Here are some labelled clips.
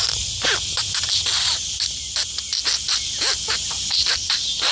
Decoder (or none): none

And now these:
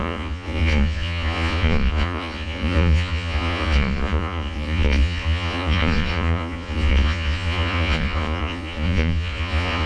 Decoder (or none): vocoder, Vocos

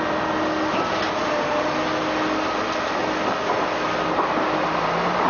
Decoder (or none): none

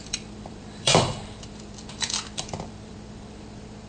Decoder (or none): vocoder, BigVGAN v2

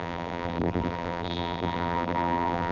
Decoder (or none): vocoder, BigVGAN v2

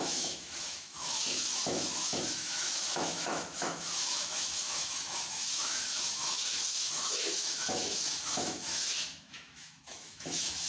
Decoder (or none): autoencoder, DAC-VAE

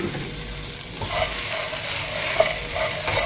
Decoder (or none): none